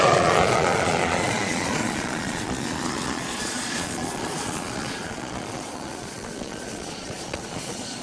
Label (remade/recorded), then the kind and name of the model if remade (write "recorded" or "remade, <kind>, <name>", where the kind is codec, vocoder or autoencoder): remade, vocoder, Vocos